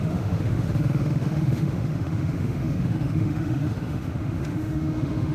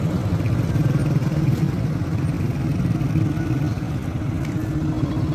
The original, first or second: second